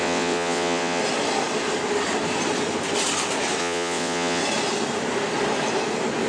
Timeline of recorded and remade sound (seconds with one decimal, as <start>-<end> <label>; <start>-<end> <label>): 0.0-1.0 remade; 1.0-3.6 recorded; 3.6-4.4 remade; 4.4-6.3 recorded